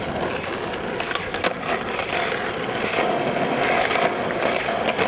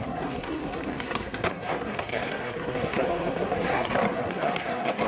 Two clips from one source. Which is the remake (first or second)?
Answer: second